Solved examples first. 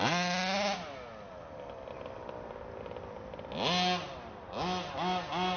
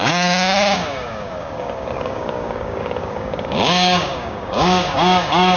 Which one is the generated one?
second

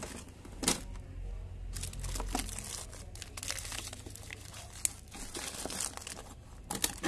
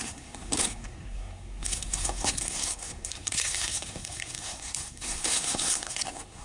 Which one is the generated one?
second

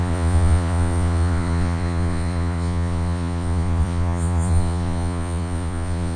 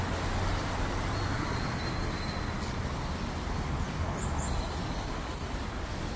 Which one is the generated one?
first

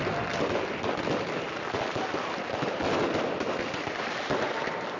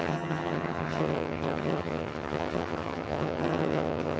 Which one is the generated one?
second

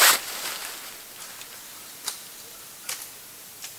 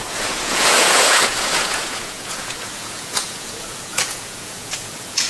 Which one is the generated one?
second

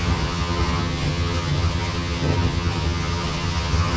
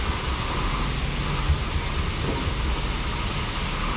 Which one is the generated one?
first